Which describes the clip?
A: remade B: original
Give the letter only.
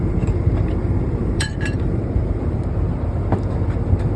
A